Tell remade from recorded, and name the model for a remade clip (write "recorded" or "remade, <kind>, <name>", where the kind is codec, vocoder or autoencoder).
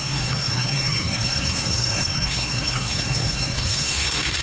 remade, codec, SNAC